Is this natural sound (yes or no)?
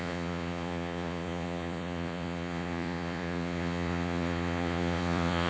no